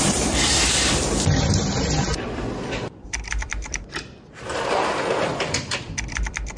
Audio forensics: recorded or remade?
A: remade